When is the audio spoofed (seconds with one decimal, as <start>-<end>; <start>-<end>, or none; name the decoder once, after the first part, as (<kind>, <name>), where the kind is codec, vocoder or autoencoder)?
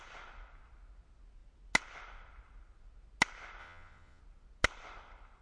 3.6-4.2 (vocoder, Vocos)